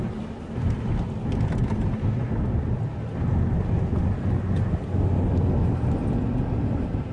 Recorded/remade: recorded